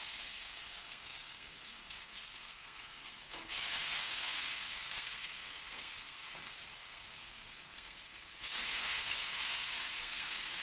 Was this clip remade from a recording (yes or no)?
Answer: yes